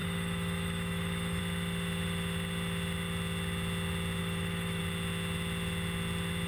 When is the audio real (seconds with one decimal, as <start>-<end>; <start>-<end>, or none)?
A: 1.4-4.2; 4.8-6.5